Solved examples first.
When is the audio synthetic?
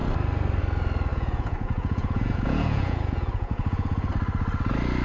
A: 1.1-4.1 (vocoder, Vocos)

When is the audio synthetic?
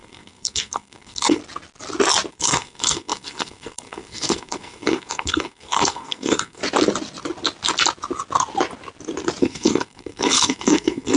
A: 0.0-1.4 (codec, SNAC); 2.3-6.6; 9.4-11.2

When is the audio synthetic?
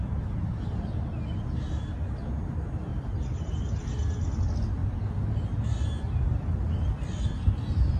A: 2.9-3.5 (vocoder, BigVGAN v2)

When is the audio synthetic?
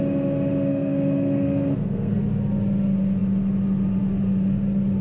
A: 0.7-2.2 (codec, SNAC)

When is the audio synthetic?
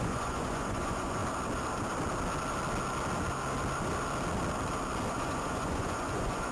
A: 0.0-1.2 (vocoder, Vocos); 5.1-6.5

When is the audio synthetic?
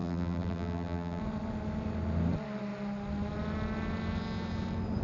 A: 0.0-1.2 (vocoder, BigVGAN v2)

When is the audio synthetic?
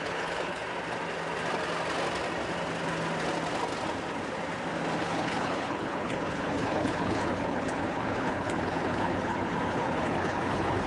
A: 0.0-0.6 (codec, HILCodec); 5.0-10.9